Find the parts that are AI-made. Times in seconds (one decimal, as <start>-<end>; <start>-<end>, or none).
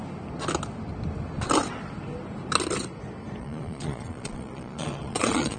3.4-5.6